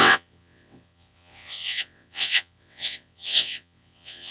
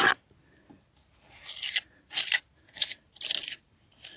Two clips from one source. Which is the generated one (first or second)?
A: first